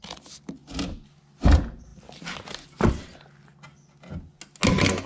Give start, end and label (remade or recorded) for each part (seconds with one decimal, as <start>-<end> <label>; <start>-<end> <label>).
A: 0.0-5.1 recorded